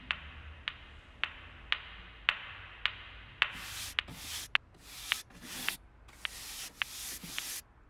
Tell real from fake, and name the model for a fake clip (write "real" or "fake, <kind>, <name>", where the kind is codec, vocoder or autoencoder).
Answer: real